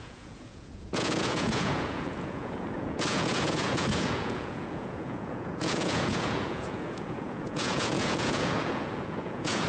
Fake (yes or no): yes